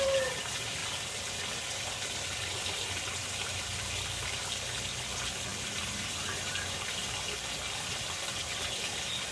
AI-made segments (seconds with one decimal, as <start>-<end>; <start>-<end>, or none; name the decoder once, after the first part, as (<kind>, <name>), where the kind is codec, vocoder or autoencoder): none